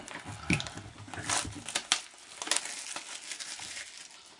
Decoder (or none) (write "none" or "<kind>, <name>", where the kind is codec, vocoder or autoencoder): none